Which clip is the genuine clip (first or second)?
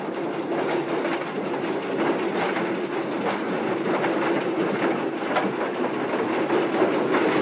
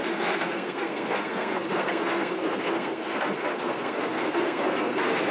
first